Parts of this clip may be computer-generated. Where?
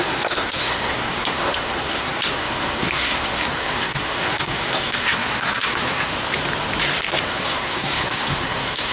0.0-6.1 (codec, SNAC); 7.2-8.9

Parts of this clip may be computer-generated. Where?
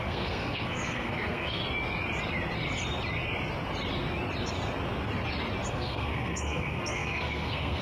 0.0-1.6 (codec, SNAC); 5.7-7.8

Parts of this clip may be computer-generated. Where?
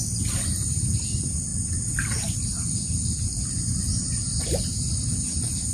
none